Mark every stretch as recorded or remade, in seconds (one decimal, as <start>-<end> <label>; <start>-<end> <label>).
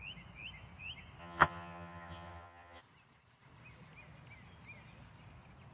0.0-1.2 recorded; 1.2-2.8 remade; 2.8-5.7 recorded